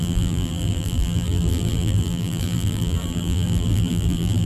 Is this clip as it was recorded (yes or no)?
no